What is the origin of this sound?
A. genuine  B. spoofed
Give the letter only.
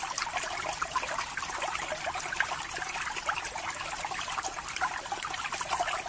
A